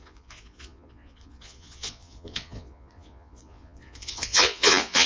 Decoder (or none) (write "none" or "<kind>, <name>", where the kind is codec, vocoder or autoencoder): vocoder, Vocos